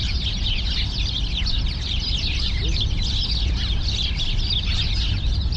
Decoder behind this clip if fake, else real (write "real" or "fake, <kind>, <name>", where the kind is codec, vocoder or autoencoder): real